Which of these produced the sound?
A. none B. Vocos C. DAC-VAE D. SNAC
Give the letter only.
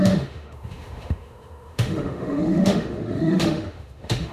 C